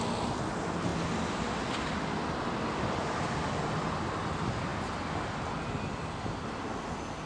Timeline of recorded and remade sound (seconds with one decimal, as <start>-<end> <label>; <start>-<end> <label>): 0.0-7.3 recorded